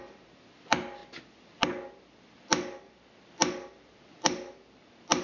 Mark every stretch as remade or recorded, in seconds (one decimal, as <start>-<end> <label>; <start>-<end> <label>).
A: 0.0-5.2 recorded